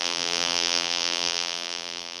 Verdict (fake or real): fake